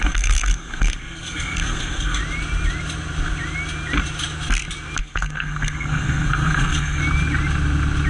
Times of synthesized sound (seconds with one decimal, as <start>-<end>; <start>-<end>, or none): 0.0-2.2; 5.0-7.0